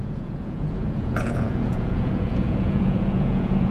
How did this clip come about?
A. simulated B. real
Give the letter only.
A